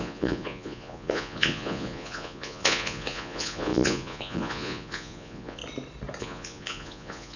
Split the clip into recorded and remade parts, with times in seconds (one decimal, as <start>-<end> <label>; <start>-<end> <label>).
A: 0.0-5.6 remade; 5.6-6.2 recorded; 6.2-7.4 remade